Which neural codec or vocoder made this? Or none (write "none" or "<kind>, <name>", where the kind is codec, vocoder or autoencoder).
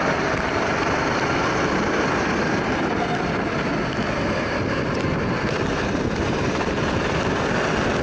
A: none